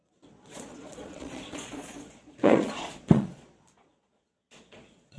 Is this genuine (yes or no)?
no